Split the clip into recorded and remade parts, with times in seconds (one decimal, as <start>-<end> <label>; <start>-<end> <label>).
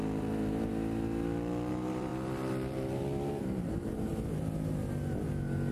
0.0-0.7 remade; 0.7-1.7 recorded; 1.7-4.1 remade; 4.1-5.7 recorded